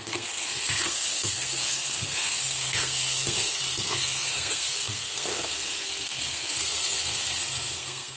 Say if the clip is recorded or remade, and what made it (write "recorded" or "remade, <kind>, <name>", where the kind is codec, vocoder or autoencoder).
remade, codec, SNAC